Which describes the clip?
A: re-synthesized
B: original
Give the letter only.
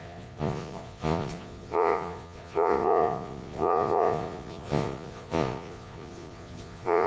A